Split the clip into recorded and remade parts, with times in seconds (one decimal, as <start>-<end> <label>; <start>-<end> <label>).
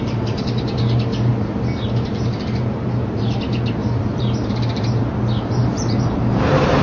0.0-6.8 remade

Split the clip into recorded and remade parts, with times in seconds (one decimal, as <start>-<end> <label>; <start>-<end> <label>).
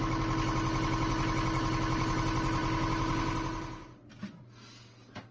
0.0-5.3 recorded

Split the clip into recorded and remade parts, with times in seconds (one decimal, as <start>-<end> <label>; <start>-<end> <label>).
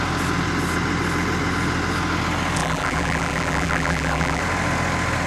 0.0-2.6 recorded; 2.6-4.4 remade; 4.4-5.3 recorded